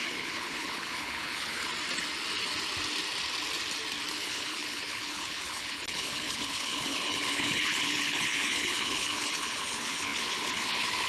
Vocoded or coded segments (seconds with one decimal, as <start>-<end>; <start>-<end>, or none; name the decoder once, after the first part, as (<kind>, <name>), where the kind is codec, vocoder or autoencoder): 0.0-1.7 (codec, HILCodec); 4.1-11.1